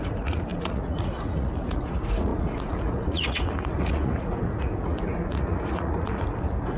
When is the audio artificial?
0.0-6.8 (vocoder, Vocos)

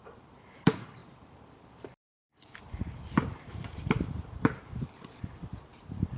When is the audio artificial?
0.0-6.2 (vocoder, BigVGAN v2)